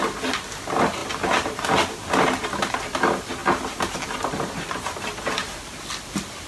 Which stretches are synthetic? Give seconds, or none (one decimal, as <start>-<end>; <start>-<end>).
none